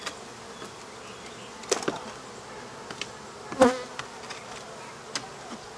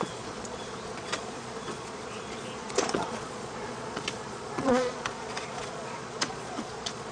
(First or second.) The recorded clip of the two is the first